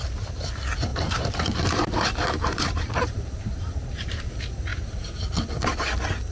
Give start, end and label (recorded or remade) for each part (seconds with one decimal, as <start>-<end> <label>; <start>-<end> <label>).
0.0-0.9 recorded; 0.9-4.3 remade; 4.3-6.3 recorded